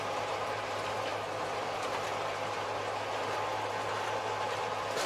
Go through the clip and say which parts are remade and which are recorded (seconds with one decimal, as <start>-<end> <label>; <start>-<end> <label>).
0.0-5.1 recorded